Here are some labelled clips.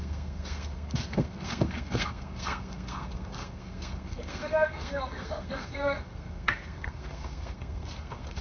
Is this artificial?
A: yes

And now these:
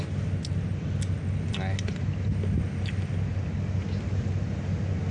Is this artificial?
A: no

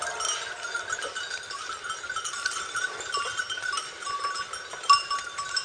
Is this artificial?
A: no